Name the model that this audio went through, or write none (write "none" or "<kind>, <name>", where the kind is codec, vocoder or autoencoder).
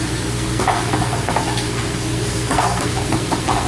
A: codec, SNAC